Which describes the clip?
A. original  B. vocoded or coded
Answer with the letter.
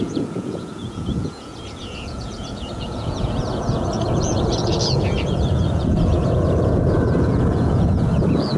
B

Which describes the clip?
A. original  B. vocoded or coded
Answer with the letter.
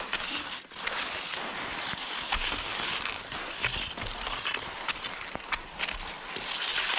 A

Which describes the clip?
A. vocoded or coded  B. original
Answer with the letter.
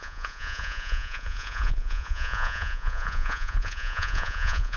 A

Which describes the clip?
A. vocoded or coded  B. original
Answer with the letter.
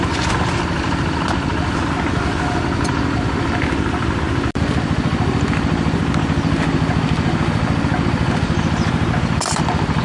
B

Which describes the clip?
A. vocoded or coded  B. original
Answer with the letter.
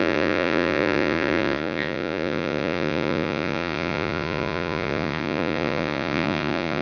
A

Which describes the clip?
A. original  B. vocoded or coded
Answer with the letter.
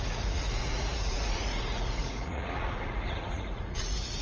B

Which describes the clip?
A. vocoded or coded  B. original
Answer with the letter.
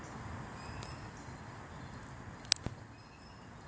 B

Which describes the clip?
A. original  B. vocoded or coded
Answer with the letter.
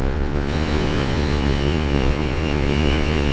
B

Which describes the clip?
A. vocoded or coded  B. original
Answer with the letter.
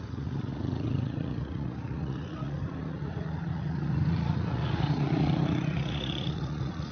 A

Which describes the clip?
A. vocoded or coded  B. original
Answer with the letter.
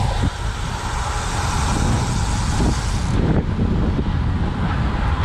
B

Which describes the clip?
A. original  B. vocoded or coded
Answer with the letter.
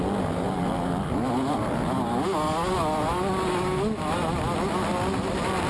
A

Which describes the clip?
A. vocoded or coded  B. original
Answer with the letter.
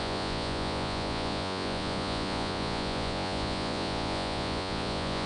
A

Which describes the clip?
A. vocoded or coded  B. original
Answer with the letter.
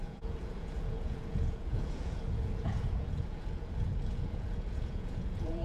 A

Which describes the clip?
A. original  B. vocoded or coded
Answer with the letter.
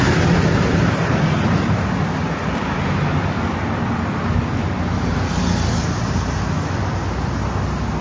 A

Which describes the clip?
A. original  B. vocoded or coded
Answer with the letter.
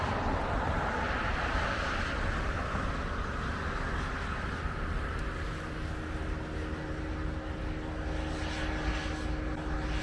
A